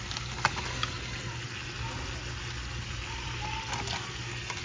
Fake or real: real